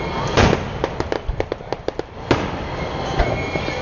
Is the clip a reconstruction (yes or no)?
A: no